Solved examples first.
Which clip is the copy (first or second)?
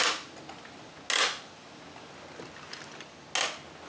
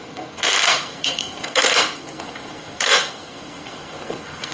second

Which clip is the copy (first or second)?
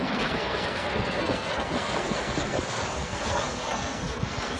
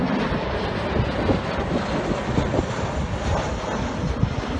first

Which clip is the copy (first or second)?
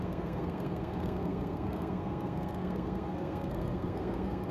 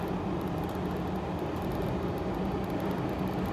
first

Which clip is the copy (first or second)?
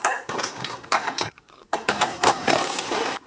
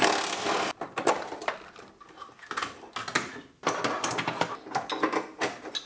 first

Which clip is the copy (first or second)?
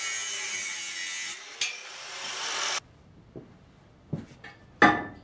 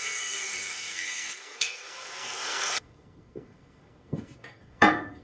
second